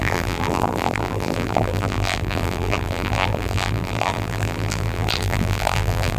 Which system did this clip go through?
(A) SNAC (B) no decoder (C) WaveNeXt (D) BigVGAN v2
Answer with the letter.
D